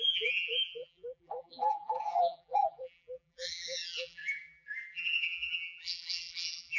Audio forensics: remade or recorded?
remade